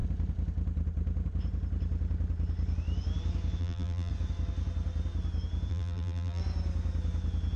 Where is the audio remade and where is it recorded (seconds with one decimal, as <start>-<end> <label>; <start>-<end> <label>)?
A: 0.0-3.6 recorded; 3.6-4.1 remade; 4.1-5.7 recorded; 5.7-6.4 remade; 6.4-7.6 recorded